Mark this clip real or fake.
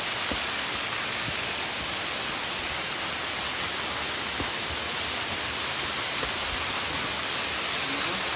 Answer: real